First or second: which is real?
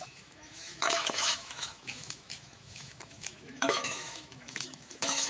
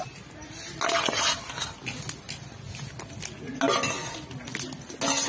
second